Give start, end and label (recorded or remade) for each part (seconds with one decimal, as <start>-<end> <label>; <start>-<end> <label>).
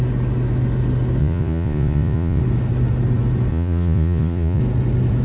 0.0-1.2 recorded; 1.2-2.4 remade; 2.4-3.5 recorded; 3.5-4.6 remade; 4.6-5.2 recorded